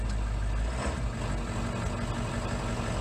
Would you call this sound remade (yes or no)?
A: no